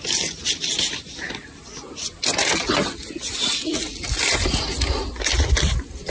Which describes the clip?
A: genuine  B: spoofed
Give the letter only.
A